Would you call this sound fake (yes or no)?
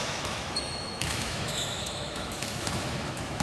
yes